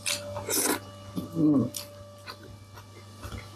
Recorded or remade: recorded